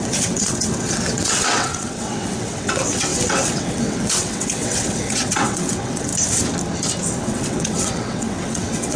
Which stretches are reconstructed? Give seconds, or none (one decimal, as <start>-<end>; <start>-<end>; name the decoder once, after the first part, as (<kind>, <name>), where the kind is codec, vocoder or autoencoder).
0.0-6.1 (vocoder, WaveNeXt); 7.2-9.0